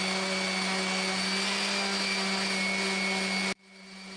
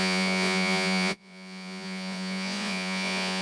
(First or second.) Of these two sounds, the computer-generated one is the second